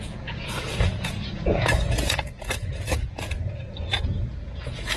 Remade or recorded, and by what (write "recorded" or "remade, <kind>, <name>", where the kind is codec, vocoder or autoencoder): remade, vocoder, Vocos